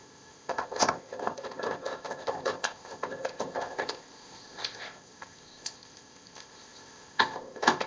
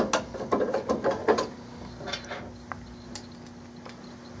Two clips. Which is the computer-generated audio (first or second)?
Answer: first